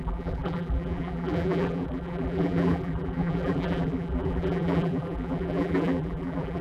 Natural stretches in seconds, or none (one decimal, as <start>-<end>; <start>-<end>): none